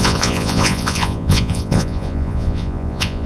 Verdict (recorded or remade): remade